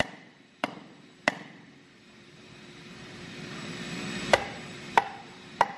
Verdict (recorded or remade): remade